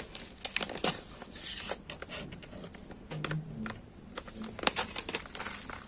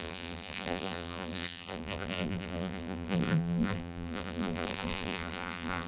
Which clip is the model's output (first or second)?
second